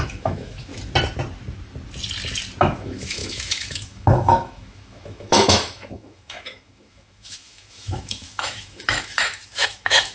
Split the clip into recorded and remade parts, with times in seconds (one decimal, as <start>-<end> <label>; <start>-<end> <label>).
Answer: 0.0-0.7 remade; 0.7-2.6 recorded; 2.6-10.1 remade